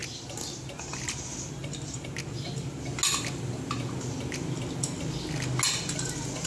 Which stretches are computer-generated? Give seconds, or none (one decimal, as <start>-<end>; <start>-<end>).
none

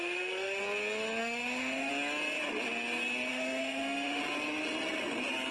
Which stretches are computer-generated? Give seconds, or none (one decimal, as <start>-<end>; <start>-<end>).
0.0-0.6; 1.2-1.9; 3.3-4.2

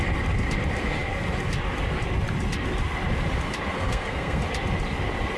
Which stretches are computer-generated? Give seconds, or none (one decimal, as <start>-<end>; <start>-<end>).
3.7-4.4

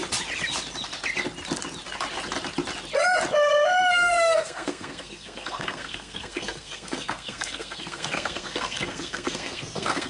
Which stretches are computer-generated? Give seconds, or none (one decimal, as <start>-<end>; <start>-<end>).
3.9-10.1

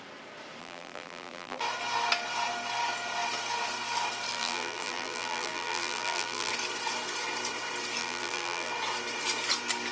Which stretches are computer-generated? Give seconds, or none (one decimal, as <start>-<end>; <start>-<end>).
0.6-1.6; 4.3-6.5; 8.0-8.7

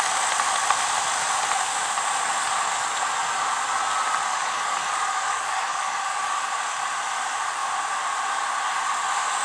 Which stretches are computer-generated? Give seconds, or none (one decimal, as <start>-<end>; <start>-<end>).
4.3-6.5

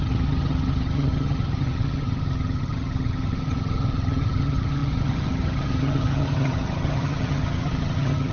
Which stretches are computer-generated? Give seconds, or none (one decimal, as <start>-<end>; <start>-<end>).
0.0-8.3